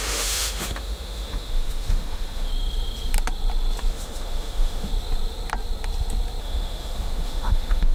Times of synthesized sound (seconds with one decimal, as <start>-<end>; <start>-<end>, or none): 0.0-2.5; 3.9-4.9; 6.4-7.9